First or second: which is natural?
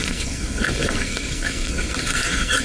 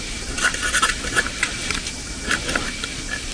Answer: second